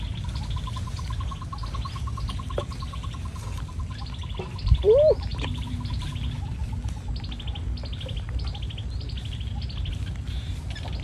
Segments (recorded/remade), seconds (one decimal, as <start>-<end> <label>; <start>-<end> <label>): 0.0-5.3 recorded; 5.3-6.1 remade; 6.1-11.0 recorded